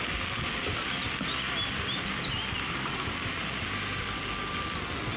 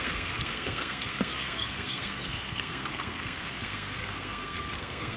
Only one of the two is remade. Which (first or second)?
second